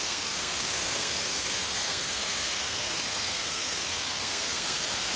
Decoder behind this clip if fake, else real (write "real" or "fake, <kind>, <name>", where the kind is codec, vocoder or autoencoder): fake, codec, SNAC